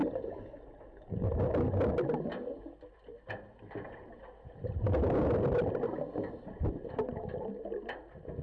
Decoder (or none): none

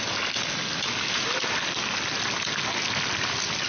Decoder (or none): none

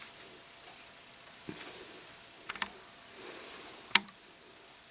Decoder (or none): vocoder, BigVGAN v2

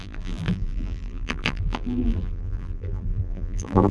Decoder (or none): vocoder, BigVGAN v2